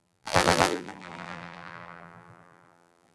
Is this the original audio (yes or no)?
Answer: no